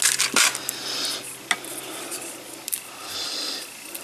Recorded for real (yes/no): yes